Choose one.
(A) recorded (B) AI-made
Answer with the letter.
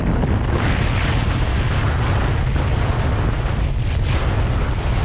A